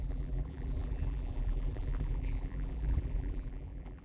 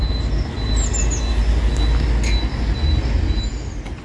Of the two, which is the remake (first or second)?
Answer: first